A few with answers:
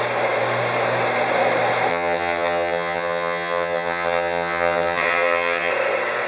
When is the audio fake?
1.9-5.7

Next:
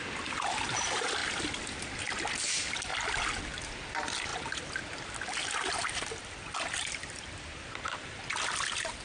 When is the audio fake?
0.0-1.2; 2.3-4.3; 4.8-9.0

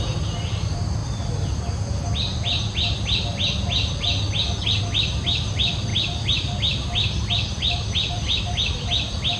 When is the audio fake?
none